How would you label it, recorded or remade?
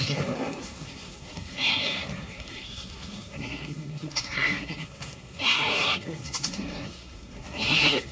remade